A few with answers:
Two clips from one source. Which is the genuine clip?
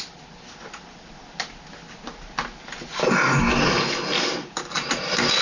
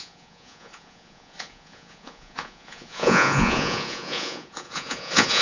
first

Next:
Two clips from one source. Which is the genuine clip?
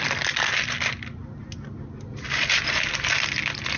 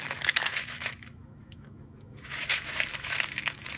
first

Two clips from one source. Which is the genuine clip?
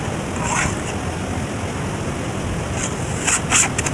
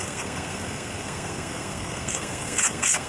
first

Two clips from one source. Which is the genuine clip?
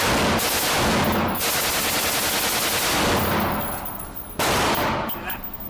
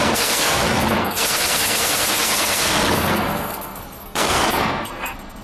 first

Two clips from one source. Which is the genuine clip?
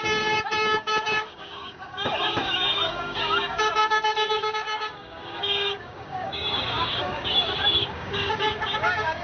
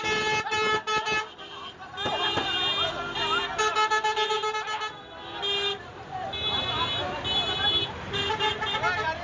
second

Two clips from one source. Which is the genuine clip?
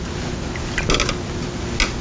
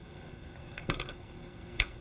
first